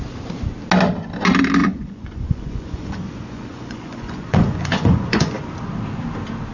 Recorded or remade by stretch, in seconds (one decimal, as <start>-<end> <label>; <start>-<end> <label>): 0.0-1.6 recorded; 1.6-5.5 remade; 5.5-6.5 recorded